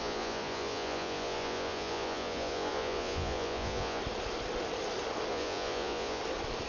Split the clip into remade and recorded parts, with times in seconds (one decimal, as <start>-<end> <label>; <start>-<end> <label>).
0.0-4.0 remade; 4.0-5.3 recorded; 5.3-6.2 remade; 6.2-6.7 recorded